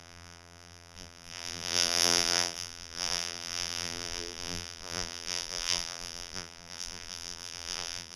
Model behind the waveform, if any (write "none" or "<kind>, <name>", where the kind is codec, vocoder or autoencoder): vocoder, BigVGAN v2